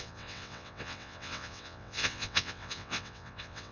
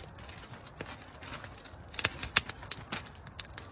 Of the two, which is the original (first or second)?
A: second